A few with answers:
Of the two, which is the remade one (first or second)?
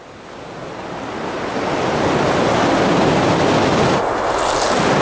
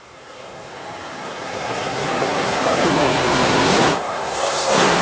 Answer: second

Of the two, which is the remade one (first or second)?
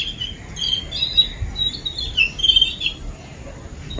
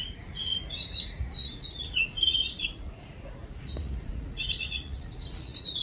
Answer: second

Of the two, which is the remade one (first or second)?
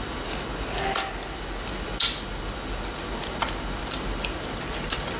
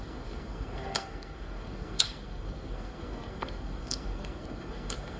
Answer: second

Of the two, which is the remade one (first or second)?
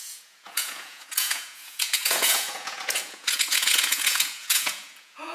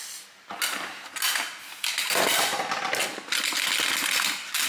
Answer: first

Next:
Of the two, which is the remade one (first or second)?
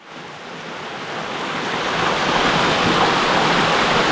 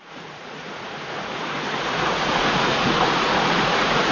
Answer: second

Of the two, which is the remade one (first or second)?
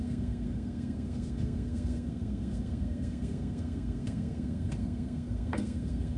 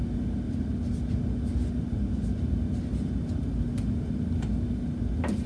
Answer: first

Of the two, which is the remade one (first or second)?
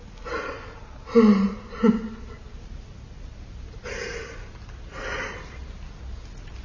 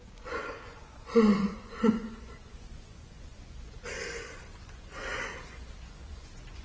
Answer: second